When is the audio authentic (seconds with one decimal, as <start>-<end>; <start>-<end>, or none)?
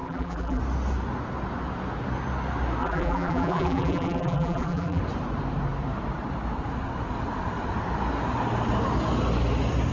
0.6-2.8; 5.0-9.9